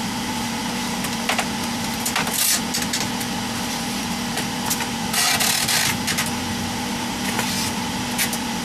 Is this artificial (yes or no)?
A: no